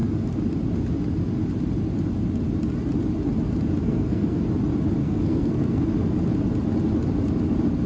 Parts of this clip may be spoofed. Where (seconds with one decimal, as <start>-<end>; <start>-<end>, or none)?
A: 3.8-4.4; 5.0-5.8